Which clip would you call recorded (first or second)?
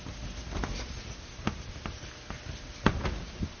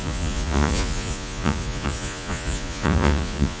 first